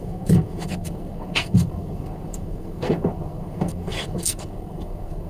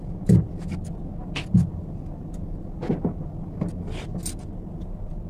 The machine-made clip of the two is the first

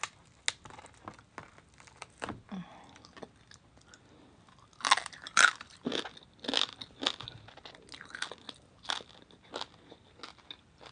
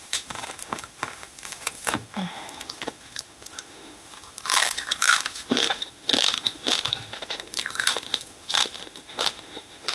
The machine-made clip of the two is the second